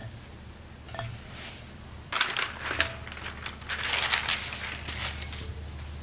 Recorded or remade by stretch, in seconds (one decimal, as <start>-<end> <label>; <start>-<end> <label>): 0.0-0.6 remade; 0.6-1.1 recorded; 1.1-2.1 remade; 2.1-6.0 recorded